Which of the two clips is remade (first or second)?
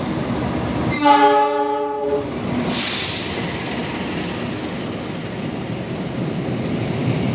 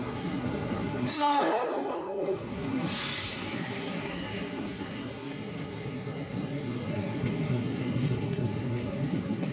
second